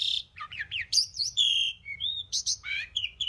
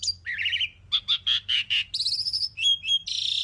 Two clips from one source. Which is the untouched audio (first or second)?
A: second